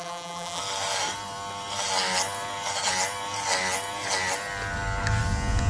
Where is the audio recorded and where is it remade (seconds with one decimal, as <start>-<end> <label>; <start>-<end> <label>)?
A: 0.0-0.6 remade; 0.6-5.7 recorded